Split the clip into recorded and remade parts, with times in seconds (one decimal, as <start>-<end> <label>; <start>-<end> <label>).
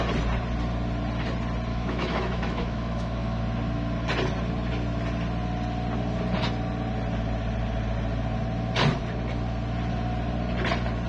0.0-1.7 recorded; 1.7-3.4 remade; 3.4-11.1 recorded